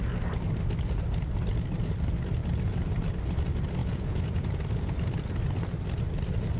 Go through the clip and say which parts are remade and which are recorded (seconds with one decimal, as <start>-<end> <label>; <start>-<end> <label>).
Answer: 0.0-3.8 recorded; 3.8-4.5 remade; 4.5-6.6 recorded